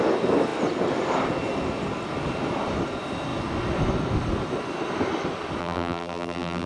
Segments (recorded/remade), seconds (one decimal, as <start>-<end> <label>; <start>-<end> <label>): 0.0-5.6 recorded; 5.6-6.7 remade